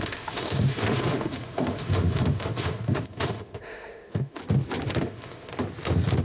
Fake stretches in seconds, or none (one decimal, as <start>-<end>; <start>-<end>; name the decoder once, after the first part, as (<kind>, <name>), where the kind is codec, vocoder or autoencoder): 0.0-4.4 (autoencoder, DAC-VAE); 5.0-5.5